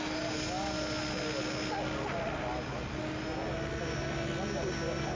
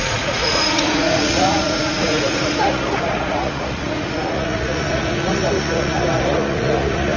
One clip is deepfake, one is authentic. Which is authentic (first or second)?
first